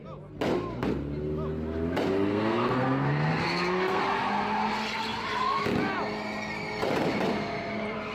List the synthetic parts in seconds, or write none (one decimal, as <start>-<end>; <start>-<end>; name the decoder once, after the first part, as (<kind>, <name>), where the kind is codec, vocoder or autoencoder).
2.3-4.0 (codec, SNAC)